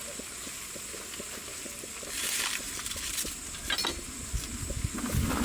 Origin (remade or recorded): recorded